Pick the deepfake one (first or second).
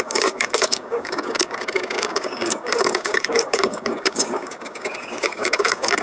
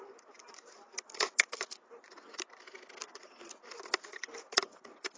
first